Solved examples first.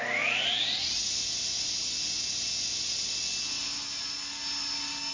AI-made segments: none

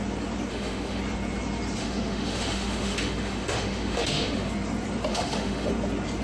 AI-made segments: 0.5-1.0; 1.8-4.5; 5.1-5.7

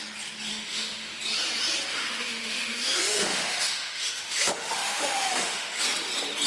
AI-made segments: 0.5-1.2; 1.9-5.8

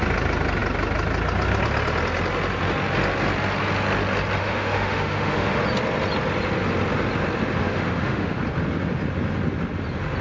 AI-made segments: 4.4-5.6; 7.6-8.4

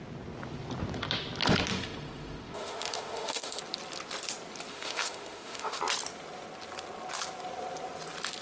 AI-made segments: 1.7-3.6; 4.7-5.8

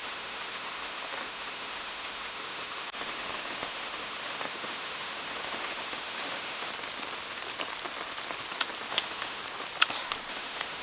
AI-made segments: 0.0-6.7; 8.9-9.4; 10.3-10.8